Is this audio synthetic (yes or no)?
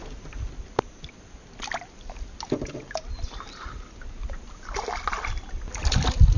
no